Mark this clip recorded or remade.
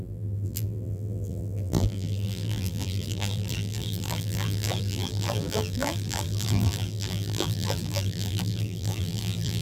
remade